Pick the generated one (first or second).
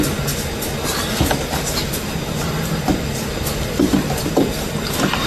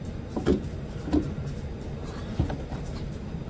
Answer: second